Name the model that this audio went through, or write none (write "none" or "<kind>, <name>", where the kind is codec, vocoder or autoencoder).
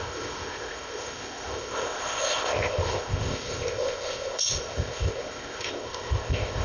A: codec, ZipCodec